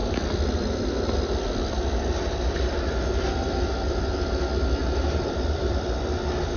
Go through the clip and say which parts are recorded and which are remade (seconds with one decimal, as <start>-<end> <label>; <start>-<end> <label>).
0.0-6.6 remade